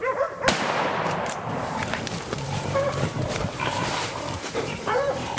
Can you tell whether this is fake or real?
fake